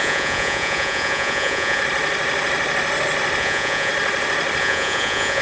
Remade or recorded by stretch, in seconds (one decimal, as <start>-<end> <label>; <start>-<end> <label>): 0.0-1.8 remade; 1.8-3.4 recorded; 3.4-3.9 remade; 3.9-4.6 recorded; 4.6-5.4 remade